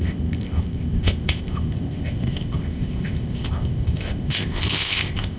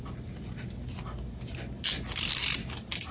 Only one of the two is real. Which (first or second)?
second